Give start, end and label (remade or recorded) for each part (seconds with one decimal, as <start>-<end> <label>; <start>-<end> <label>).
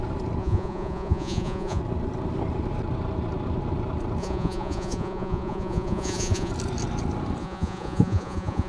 0.0-0.4 recorded; 0.4-1.8 remade; 1.8-4.2 recorded; 4.2-6.5 remade; 6.5-7.4 recorded; 7.4-8.7 remade